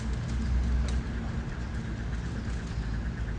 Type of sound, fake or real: real